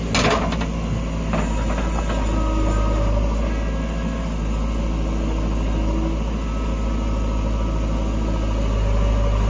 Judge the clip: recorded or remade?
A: recorded